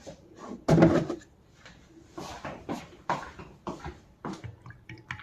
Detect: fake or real real